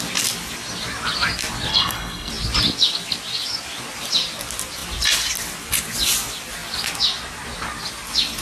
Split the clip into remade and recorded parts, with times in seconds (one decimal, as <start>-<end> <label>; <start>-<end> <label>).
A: 0.0-1.7 recorded; 1.7-2.3 remade; 2.3-8.4 recorded